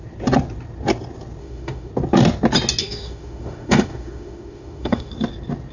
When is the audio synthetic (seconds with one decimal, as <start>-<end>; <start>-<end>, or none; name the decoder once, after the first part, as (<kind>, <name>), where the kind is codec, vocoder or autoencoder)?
1.4-1.9 (autoencoder, DAC-VAE); 2.8-5.1